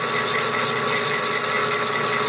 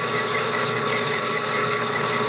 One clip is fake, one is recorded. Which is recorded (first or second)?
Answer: first